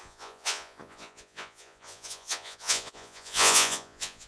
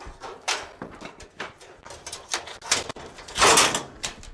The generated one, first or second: first